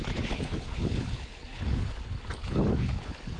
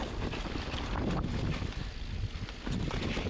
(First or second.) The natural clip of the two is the second